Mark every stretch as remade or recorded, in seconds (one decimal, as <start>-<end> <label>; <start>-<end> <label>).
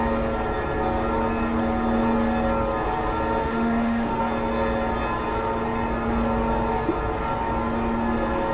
0.0-3.4 recorded; 3.4-4.2 remade; 4.2-8.5 recorded